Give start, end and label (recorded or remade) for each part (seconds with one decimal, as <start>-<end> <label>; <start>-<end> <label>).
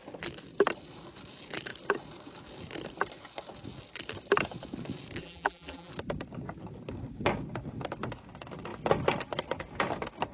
0.0-5.2 recorded; 5.2-5.9 remade; 5.9-10.3 recorded